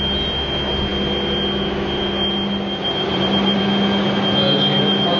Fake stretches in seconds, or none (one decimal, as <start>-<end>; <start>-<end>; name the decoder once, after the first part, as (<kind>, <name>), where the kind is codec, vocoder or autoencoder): 2.8-3.6 (vocoder, BigVGAN v2)